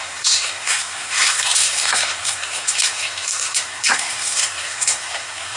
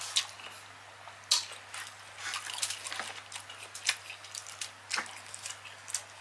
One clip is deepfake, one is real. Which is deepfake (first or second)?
first